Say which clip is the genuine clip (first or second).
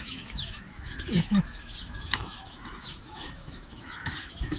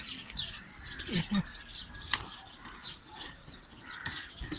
second